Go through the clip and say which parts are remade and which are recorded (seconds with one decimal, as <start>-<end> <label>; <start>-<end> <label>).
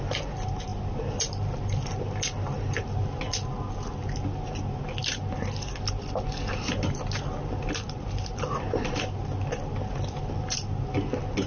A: 0.0-11.5 recorded